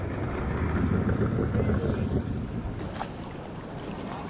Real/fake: real